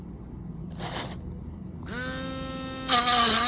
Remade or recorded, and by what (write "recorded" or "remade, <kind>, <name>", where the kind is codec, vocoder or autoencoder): recorded